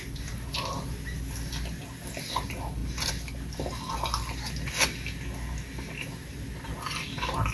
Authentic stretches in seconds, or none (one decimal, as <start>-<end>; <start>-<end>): 0.0-7.5